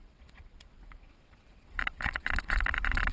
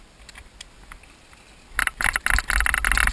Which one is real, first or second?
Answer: second